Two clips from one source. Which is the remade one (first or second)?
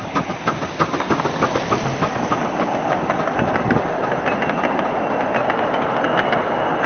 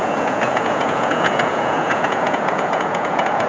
second